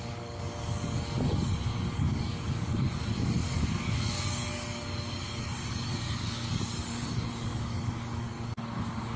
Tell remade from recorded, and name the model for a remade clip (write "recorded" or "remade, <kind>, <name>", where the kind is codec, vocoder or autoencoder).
remade, codec, DAC